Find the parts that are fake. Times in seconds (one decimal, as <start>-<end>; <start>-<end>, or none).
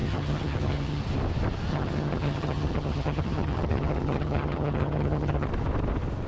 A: 0.0-1.0; 1.7-5.5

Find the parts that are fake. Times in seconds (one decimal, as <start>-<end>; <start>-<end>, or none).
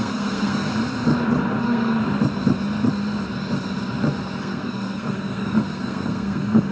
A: 0.0-0.7; 1.6-2.0; 4.4-6.7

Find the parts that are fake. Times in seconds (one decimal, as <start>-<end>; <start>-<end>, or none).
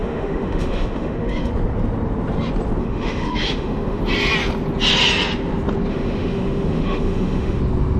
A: 0.0-1.5; 2.8-4.0; 5.9-7.6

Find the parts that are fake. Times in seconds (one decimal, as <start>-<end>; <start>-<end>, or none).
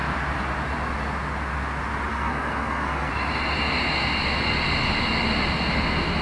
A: 2.1-3.1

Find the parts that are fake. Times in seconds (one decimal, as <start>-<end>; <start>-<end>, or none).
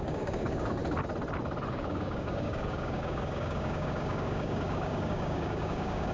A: 0.0-0.8; 1.7-6.1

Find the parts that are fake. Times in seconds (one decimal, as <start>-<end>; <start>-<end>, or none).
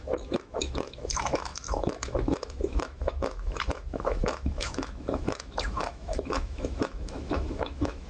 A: 0.0-8.1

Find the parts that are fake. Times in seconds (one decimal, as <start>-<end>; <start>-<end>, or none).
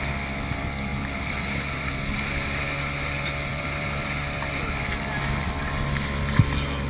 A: 0.9-1.9; 3.5-4.9